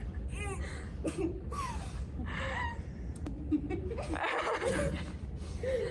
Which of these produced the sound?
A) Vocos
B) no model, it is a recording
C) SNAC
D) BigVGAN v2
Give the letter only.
B